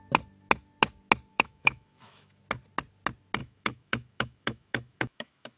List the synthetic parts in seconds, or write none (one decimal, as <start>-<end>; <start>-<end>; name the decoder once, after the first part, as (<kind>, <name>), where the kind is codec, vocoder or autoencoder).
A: 1.3-2.4 (autoencoder, DAC-VAE); 3.4-5.6